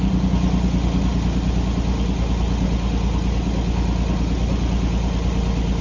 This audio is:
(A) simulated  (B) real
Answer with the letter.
B